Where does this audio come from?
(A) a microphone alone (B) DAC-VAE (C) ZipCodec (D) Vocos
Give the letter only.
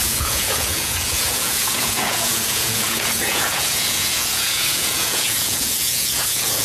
D